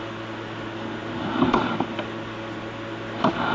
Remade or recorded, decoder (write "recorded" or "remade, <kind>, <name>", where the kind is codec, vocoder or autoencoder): recorded